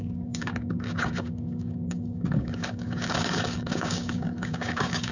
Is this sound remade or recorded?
remade